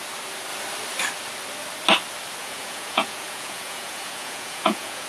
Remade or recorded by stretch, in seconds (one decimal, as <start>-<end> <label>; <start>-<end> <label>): 0.0-2.4 recorded; 2.4-5.1 remade